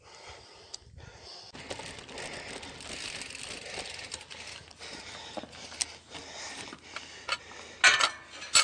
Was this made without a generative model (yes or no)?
yes